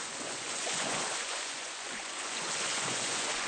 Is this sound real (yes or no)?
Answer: no